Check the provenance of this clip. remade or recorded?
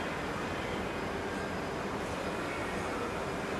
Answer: recorded